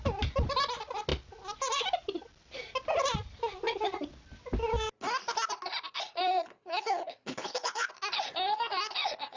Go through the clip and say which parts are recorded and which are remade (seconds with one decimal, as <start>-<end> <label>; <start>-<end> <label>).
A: 0.0-6.4 recorded; 6.4-7.9 remade; 7.9-9.4 recorded